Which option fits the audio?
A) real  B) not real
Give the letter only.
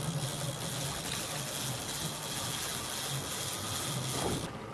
A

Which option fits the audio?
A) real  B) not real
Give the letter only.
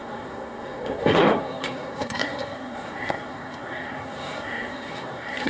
B